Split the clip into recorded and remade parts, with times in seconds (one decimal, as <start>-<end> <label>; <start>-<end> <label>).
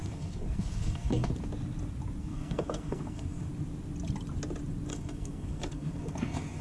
0.0-1.3 remade; 1.3-2.2 recorded; 2.2-3.5 remade; 3.5-4.9 recorded; 4.9-6.6 remade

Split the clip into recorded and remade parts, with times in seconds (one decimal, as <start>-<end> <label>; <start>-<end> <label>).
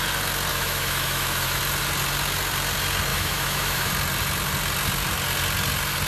0.0-0.5 recorded; 0.5-1.6 remade; 1.6-3.1 recorded; 3.1-3.9 remade; 3.9-6.1 recorded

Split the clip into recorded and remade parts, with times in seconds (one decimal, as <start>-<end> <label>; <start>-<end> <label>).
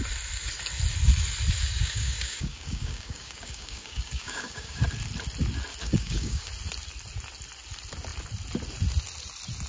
0.0-1.8 recorded; 1.8-4.8 remade; 4.8-5.8 recorded; 5.8-6.5 remade; 6.5-9.7 recorded